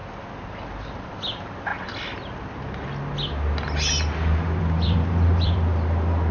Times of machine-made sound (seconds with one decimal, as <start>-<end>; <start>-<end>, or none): 0.5-1.7; 4.6-6.3